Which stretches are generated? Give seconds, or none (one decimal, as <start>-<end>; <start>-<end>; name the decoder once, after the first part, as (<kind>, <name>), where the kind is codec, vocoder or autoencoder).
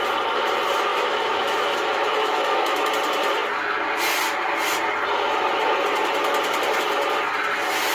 0.9-2.9 (autoencoder, DAC-VAE)